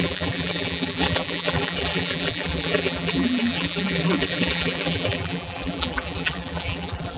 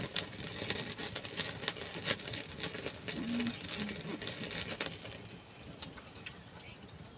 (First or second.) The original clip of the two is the second